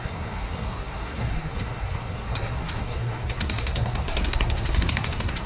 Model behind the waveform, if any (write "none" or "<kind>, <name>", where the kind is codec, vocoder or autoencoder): codec, SNAC